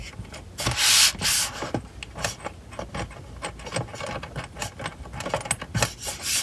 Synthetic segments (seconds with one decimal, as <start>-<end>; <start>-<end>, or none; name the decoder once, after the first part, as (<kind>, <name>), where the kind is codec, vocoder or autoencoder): none